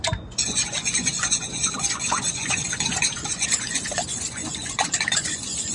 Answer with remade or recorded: remade